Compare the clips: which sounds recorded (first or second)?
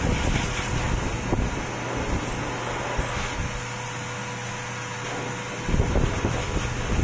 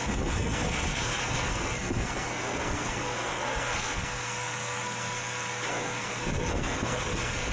first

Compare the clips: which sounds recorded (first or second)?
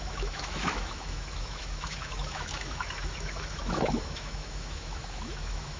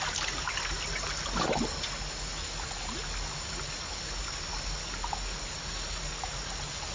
second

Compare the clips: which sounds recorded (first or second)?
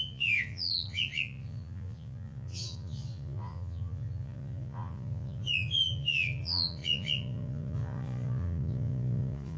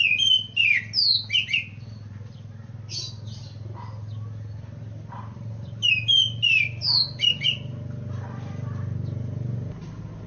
second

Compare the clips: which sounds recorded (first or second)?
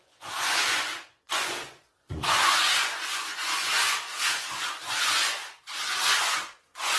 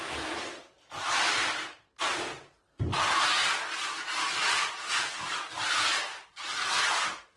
second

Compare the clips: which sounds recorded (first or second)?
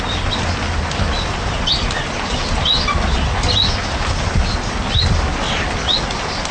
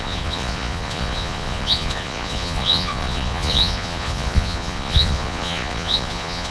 first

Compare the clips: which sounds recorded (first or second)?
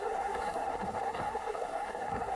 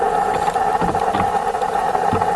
second